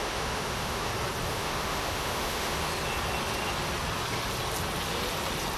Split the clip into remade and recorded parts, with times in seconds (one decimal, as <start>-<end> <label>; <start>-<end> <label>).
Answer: 0.0-0.9 remade; 0.9-1.3 recorded; 1.3-2.7 remade; 2.7-5.6 recorded